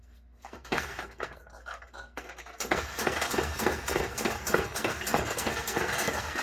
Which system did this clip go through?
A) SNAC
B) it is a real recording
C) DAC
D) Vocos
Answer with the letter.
A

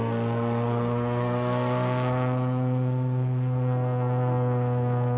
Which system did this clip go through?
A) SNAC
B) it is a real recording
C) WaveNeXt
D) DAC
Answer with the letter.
A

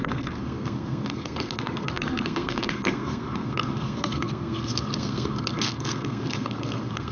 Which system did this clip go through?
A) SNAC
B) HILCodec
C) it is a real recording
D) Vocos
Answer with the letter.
A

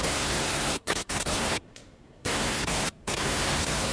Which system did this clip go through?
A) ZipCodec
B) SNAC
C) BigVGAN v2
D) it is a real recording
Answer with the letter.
B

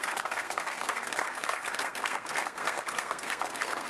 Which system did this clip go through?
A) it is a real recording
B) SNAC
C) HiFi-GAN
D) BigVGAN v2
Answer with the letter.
B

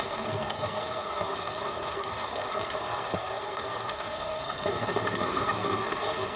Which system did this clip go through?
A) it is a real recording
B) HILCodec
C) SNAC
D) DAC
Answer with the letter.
C